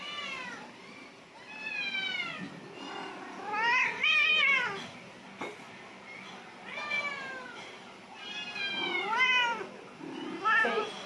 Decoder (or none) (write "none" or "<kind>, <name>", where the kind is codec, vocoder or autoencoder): none